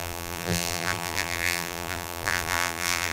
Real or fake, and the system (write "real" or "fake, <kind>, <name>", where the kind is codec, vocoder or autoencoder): fake, vocoder, BigVGAN v2